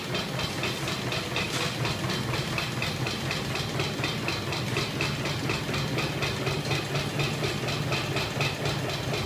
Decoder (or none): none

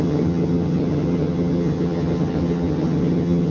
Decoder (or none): vocoder, HiFi-GAN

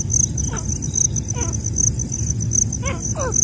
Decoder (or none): none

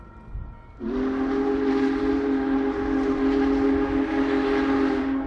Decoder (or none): none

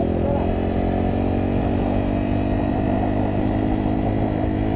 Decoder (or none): none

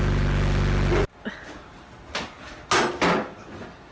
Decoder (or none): none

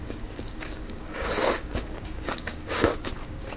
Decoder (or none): codec, DAC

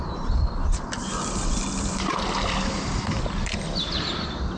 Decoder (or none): vocoder, BigVGAN v2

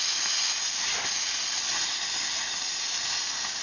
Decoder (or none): none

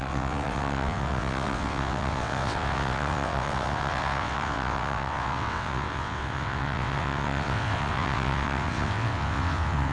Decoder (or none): vocoder, WaveNeXt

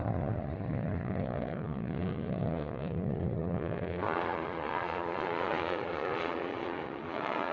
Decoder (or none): vocoder, Vocos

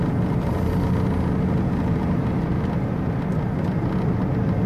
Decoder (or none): none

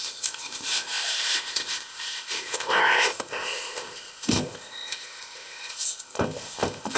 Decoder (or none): codec, ZipCodec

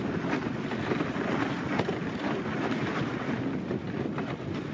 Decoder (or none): none